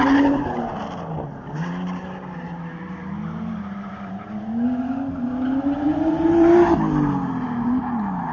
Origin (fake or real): real